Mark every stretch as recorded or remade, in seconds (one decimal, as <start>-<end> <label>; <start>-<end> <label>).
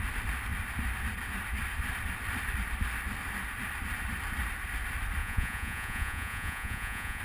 0.0-5.2 recorded; 5.2-7.2 remade